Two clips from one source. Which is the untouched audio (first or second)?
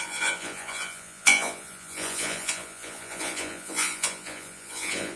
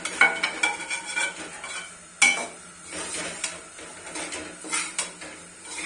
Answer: second